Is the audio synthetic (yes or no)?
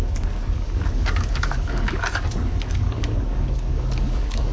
yes